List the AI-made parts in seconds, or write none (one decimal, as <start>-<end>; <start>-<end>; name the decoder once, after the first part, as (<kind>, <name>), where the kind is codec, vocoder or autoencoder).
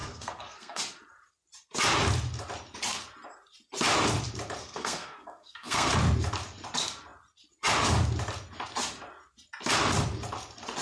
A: 0.0-0.8 (codec, SNAC); 4.6-5.9